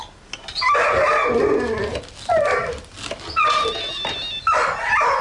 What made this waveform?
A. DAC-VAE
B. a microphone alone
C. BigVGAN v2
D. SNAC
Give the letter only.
B